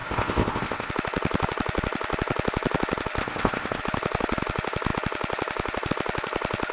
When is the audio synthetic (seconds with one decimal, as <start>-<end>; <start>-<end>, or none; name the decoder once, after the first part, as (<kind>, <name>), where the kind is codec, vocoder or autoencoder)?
0.0-0.9 (codec, ZipCodec); 3.2-3.8